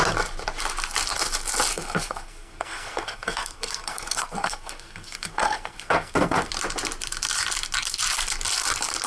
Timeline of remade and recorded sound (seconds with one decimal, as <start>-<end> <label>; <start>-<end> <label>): 0.0-1.7 recorded; 1.7-6.5 remade; 6.5-9.1 recorded